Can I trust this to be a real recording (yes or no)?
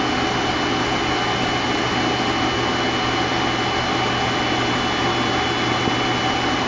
yes